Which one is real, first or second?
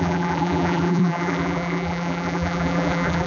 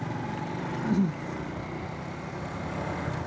second